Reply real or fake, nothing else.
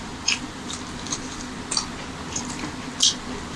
real